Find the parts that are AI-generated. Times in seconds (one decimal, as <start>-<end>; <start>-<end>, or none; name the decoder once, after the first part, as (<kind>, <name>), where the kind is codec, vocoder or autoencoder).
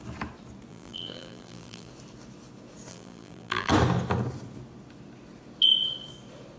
0.7-1.9 (vocoder, BigVGAN v2); 2.9-3.7